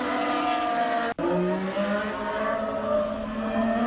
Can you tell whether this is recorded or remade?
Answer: recorded